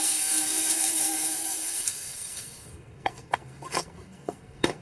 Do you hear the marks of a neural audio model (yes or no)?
yes